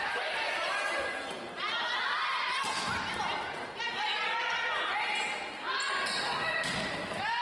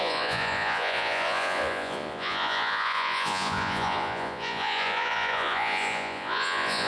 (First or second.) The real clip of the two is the first